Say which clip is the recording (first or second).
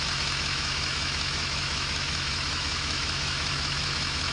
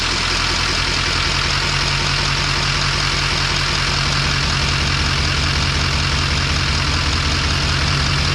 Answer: second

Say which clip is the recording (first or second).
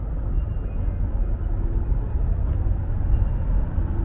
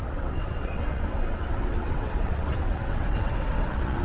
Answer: first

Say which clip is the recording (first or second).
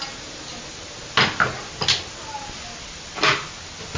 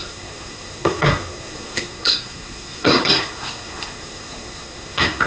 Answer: first